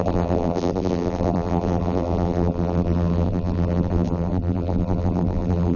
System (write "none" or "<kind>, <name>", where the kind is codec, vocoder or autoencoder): vocoder, BigVGAN v2